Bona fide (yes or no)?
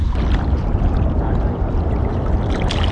no